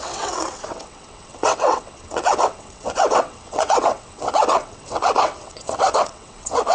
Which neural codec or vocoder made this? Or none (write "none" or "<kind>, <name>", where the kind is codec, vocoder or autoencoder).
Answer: vocoder, WaveNeXt